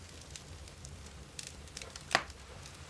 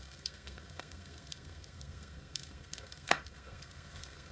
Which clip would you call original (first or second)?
first